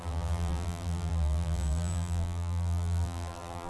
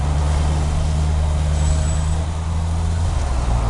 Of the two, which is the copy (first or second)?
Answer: first